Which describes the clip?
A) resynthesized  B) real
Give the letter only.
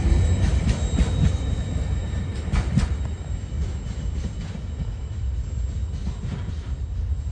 B